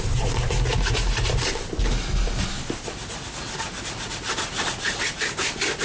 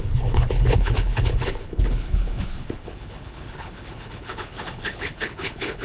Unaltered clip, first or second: first